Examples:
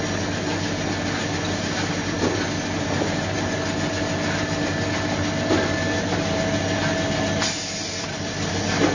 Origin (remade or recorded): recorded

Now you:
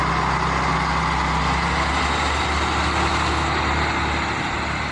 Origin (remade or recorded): recorded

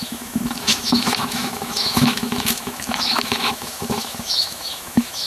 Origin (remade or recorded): remade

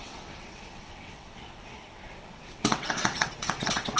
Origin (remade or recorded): remade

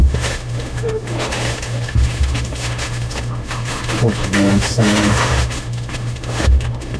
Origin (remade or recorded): remade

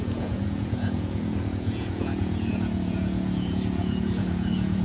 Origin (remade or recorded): remade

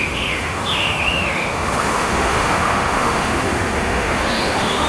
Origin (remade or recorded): remade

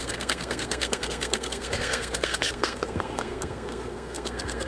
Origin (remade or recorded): remade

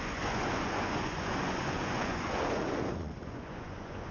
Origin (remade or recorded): remade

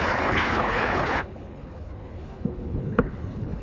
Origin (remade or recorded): remade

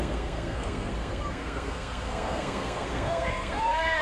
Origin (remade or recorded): remade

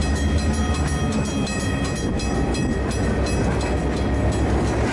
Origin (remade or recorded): recorded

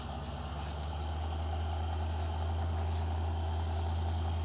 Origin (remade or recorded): recorded